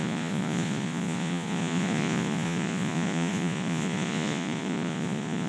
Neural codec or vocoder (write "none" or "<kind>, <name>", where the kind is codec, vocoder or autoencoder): vocoder, Vocos